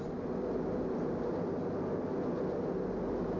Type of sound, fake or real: real